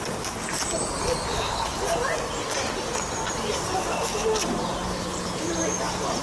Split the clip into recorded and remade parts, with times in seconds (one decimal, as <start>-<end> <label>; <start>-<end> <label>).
0.0-1.3 recorded; 1.3-1.8 remade; 1.8-4.9 recorded; 4.9-5.5 remade; 5.5-6.2 recorded